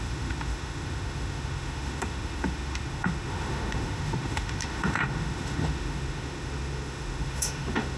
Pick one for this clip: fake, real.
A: fake